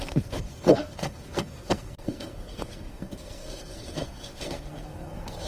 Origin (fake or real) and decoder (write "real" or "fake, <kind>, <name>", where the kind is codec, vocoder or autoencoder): fake, codec, SNAC